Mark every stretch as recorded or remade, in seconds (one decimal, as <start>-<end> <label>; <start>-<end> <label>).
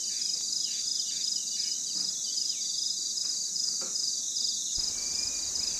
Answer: 0.0-5.8 recorded